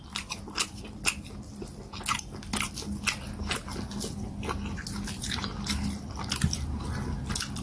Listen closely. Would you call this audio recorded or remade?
recorded